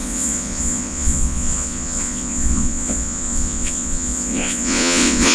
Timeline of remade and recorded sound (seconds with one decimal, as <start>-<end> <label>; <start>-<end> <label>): 0.0-5.3 remade